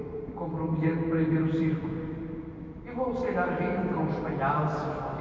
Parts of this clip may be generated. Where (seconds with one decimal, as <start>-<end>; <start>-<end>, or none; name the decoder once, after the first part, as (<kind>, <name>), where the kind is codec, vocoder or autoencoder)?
none